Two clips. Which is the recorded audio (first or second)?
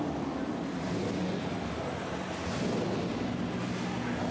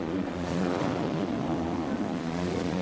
first